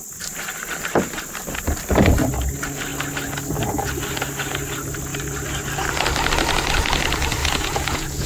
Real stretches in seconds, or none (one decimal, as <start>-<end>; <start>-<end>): 0.0-7.4